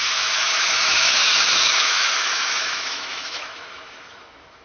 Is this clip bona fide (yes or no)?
no